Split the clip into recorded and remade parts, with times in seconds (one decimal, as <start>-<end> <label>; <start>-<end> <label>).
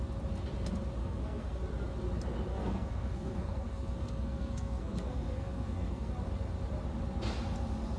0.0-1.0 recorded; 1.0-1.6 remade; 1.6-2.5 recorded; 2.5-6.1 remade; 6.1-8.0 recorded